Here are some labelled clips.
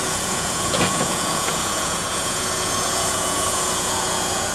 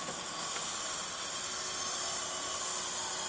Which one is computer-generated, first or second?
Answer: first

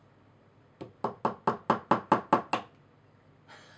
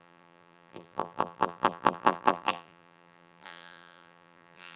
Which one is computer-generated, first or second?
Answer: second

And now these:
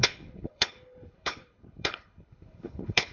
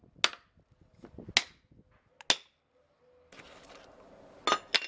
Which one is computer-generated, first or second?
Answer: first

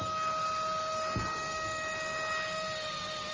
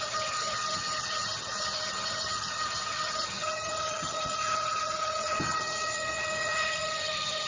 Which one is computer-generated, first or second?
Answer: second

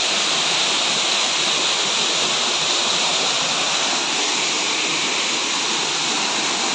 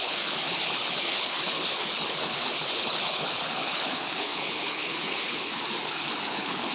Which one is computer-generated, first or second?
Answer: second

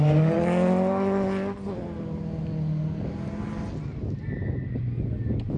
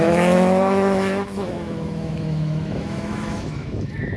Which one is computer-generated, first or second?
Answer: second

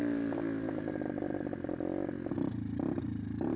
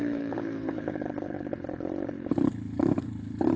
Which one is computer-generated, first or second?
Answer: second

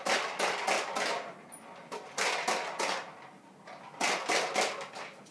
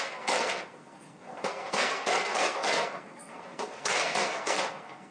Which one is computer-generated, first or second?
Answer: second